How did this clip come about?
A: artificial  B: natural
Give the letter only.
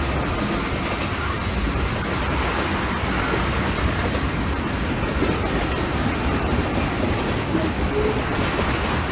B